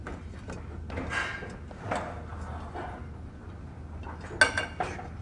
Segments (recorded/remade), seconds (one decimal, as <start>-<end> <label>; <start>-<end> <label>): 0.0-5.2 recorded

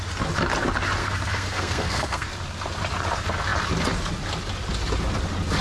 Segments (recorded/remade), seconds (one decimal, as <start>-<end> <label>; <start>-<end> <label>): 0.0-1.0 recorded; 1.0-2.3 remade; 2.3-5.6 recorded